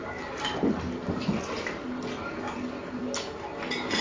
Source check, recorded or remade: recorded